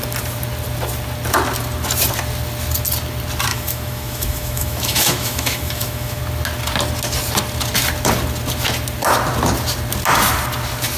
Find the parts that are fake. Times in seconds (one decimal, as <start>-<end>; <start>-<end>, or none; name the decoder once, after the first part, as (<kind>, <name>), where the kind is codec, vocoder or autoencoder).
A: 3.5-6.2 (autoencoder, DAC-VAE)